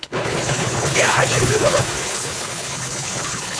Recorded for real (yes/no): no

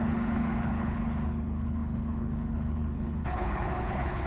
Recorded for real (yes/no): no